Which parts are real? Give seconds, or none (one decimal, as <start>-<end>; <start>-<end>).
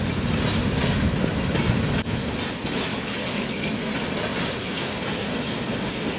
0.0-2.9; 3.9-6.2